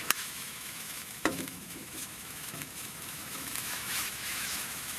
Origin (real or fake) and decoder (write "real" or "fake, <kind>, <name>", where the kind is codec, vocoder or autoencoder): fake, autoencoder, DAC-VAE